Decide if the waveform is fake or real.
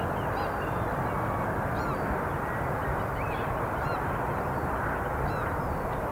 real